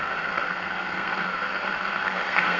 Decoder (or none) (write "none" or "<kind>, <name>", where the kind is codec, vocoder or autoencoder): codec, SNAC